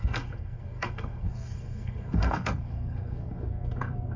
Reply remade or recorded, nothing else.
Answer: remade